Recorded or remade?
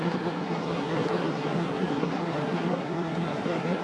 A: remade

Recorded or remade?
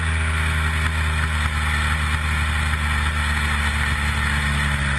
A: recorded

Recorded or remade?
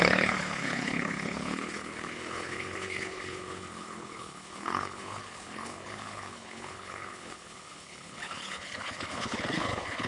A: remade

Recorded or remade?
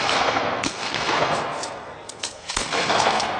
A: remade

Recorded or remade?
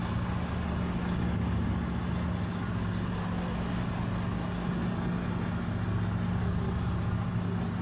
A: recorded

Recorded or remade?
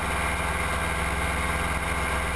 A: recorded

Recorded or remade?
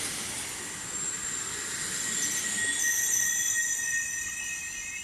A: recorded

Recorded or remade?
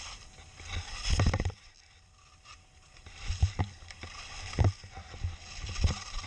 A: recorded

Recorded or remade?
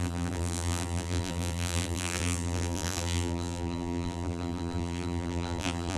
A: remade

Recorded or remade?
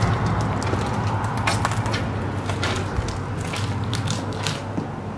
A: recorded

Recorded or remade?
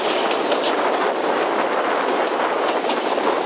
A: recorded